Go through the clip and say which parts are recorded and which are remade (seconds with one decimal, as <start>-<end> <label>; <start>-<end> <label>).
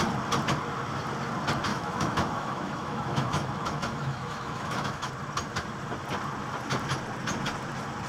0.0-1.7 recorded; 1.7-5.1 remade; 5.1-8.1 recorded